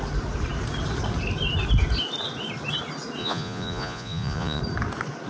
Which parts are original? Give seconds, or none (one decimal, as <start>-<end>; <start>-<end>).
0.0-3.2; 4.6-5.3